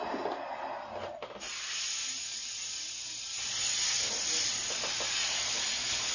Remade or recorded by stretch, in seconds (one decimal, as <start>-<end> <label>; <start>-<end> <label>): 0.0-6.1 recorded